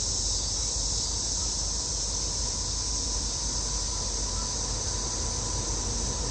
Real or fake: real